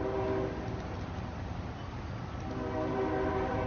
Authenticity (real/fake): real